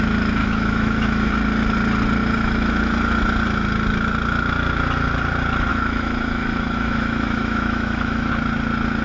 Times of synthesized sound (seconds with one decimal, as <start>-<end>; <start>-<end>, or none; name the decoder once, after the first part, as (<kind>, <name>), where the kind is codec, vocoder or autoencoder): 0.4-1.3 (autoencoder, DAC-VAE); 2.2-2.9; 5.7-8.3